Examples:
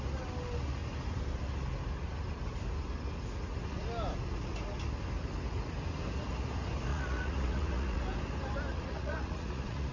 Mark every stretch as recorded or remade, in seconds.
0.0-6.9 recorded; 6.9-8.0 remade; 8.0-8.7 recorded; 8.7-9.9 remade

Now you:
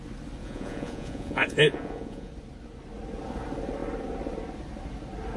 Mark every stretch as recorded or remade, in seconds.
0.0-0.4 recorded; 0.4-2.3 remade; 2.3-5.4 recorded